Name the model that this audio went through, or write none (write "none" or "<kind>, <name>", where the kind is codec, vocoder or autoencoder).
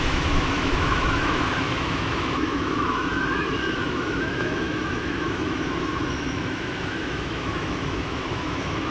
autoencoder, DAC-VAE